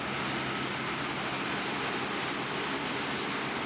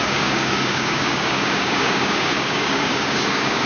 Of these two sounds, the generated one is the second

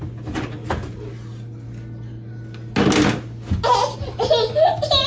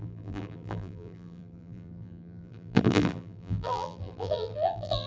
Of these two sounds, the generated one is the second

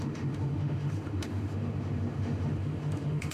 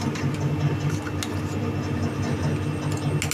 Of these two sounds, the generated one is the first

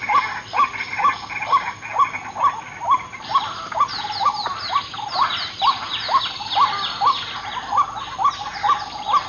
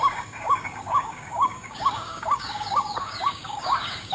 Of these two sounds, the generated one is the second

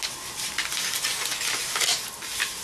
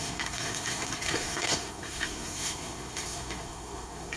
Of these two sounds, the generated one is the second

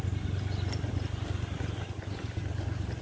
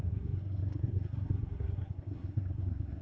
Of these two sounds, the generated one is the second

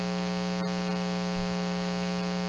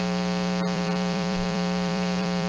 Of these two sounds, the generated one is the second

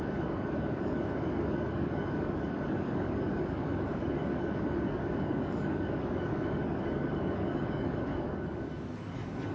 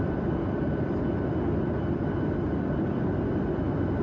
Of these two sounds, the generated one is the first